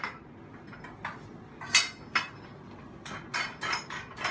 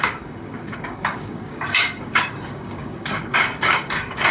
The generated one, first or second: second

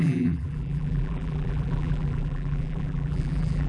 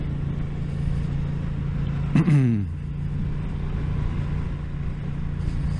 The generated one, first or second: first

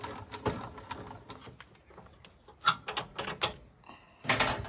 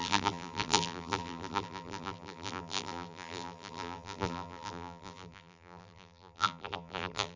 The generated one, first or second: second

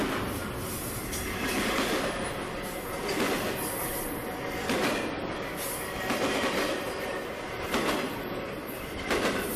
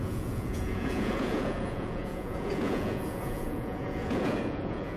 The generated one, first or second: second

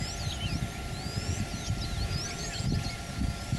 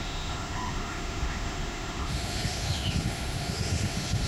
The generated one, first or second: second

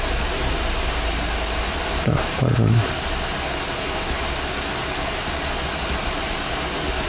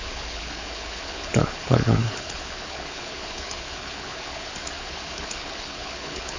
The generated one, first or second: second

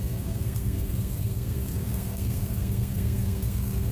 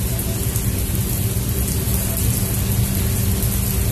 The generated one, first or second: first